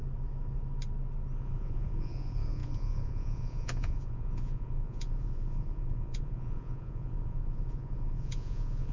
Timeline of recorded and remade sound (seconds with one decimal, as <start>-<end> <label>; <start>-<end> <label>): 0.0-1.4 recorded; 1.4-8.9 remade